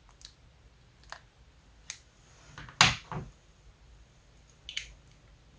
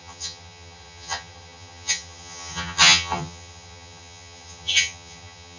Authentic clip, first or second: first